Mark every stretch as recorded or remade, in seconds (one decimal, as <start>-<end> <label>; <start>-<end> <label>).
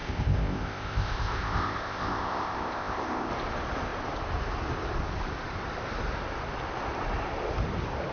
0.0-3.3 remade; 3.3-8.1 recorded